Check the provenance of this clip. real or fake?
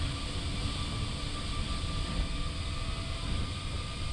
real